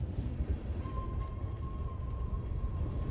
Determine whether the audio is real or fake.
real